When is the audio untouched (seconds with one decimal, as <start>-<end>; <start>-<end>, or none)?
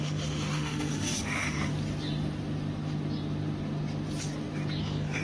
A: 1.7-4.8